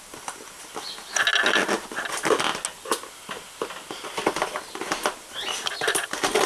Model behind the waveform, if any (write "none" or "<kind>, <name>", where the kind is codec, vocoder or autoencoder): none